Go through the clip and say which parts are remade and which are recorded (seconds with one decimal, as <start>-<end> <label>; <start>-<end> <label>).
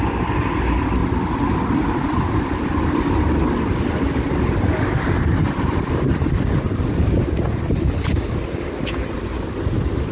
0.0-10.1 recorded